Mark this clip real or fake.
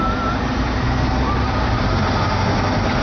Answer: real